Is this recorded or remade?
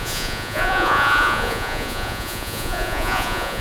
remade